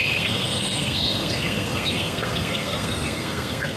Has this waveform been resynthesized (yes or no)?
yes